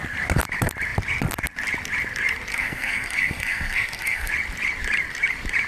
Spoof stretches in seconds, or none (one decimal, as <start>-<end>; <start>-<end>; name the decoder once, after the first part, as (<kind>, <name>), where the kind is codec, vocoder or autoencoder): 2.5-4.3 (codec, SNAC)